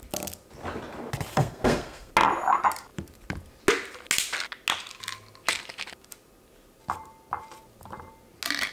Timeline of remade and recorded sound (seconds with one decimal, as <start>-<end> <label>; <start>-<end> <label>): 0.0-1.3 recorded; 1.3-2.1 remade; 2.1-8.7 recorded